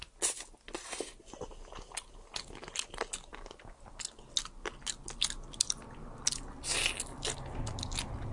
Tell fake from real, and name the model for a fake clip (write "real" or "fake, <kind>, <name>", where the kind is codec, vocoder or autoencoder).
real